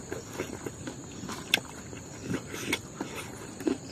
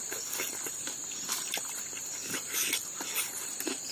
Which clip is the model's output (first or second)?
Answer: second